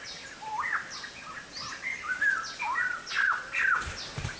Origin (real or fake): real